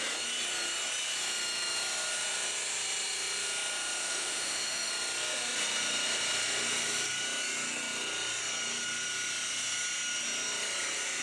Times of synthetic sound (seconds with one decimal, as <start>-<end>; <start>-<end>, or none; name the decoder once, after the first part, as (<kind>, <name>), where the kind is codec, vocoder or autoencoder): 4.0-4.9 (autoencoder, DAC-VAE)